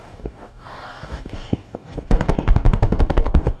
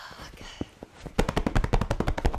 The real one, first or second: second